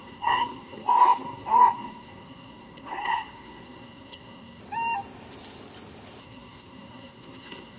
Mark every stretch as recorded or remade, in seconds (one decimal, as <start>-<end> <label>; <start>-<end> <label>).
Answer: 0.0-4.6 remade; 4.6-6.2 recorded; 6.2-7.8 remade

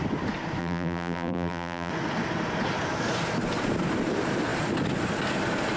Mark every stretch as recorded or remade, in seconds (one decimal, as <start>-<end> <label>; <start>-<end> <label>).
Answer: 0.0-0.6 recorded; 0.6-1.9 remade; 1.9-5.8 recorded

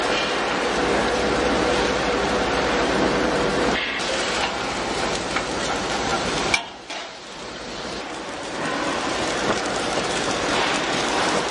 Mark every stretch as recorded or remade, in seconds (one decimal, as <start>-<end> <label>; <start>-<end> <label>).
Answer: 0.0-11.5 remade

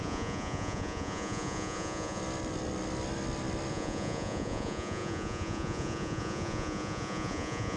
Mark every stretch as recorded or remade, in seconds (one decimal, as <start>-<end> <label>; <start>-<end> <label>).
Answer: 0.0-2.2 remade; 2.2-3.7 recorded; 3.7-7.8 remade